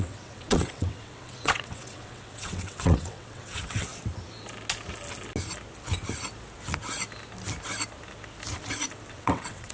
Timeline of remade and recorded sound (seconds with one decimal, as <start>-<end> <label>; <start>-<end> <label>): 0.0-3.9 remade; 3.9-9.1 recorded; 9.1-9.7 remade